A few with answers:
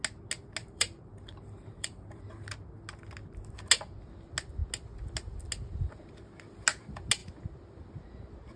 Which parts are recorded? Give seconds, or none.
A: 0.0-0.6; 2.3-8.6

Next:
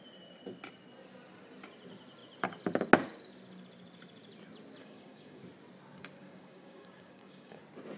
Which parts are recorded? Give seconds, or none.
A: 0.0-4.8; 5.4-6.2; 7.6-8.0